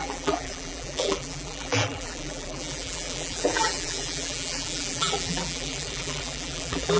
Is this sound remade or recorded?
remade